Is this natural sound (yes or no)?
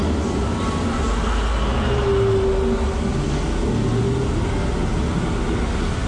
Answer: yes